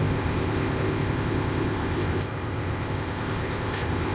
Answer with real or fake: fake